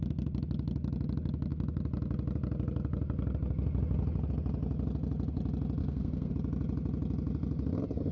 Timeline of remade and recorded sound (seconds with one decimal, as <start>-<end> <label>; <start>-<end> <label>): 0.0-5.8 recorded; 5.8-6.3 remade; 6.3-8.1 recorded